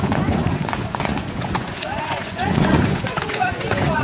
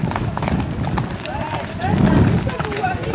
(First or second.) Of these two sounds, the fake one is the first